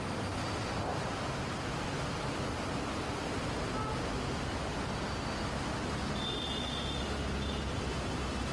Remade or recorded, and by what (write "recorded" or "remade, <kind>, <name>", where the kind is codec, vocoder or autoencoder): recorded